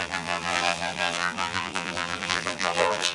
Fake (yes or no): yes